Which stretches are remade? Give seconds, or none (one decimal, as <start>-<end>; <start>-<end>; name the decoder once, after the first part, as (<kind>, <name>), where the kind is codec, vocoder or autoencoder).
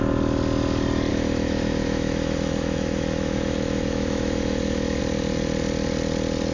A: 1.1-5.0 (autoencoder, DAC-VAE)